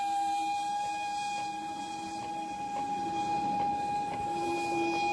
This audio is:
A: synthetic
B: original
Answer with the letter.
B